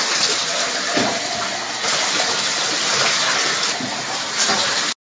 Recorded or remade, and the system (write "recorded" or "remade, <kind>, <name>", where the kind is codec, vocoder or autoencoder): recorded